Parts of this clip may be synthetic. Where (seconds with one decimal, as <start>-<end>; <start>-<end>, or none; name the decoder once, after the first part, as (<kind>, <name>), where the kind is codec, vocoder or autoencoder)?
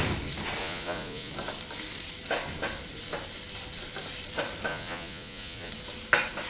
0.6-1.3 (vocoder, Vocos); 4.7-5.7